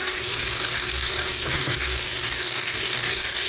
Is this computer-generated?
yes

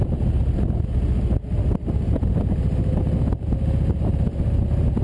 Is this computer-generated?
no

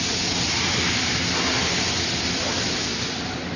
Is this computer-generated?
no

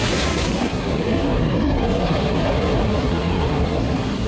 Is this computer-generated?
yes